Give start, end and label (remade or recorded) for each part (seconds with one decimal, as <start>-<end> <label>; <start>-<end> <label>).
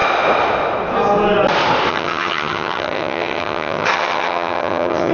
0.0-1.9 recorded; 1.9-5.1 remade